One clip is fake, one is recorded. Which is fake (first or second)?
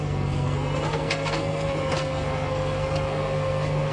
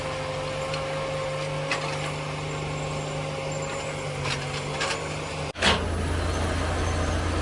first